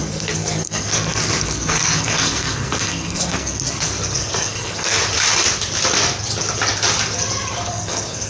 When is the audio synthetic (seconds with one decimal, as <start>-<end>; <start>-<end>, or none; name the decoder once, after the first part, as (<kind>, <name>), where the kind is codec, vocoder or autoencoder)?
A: 0.0-5.0 (codec, SNAC); 7.7-8.3